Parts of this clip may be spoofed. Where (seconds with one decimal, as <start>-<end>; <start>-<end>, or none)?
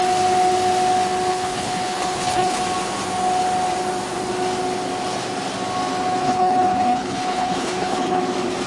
1.3-2.6; 6.2-8.2